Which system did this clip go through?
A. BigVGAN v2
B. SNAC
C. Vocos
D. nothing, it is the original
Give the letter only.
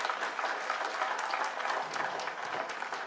D